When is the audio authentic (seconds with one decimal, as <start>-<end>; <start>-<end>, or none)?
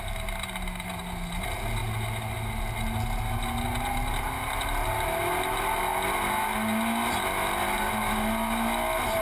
0.0-9.2